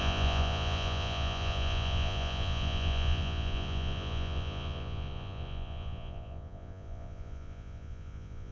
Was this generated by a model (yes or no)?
yes